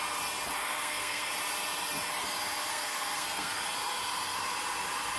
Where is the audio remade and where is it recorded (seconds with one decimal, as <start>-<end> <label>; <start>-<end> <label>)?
0.0-0.6 recorded; 0.6-1.3 remade; 1.3-2.7 recorded; 2.7-3.5 remade; 3.5-5.2 recorded